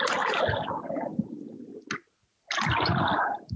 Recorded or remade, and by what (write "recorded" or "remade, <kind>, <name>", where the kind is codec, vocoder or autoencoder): recorded